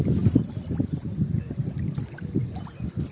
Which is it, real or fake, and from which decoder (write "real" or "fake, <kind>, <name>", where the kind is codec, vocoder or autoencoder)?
real